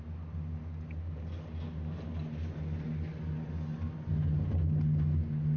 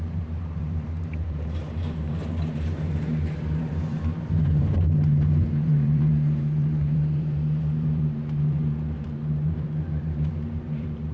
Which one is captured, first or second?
first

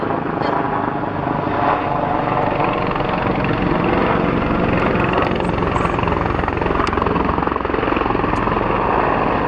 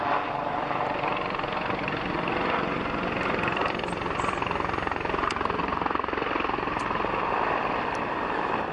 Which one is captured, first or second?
first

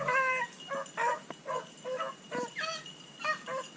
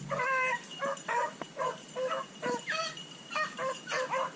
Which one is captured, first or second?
first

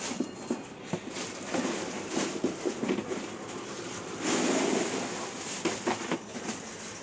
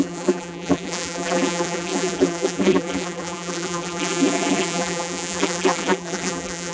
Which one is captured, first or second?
first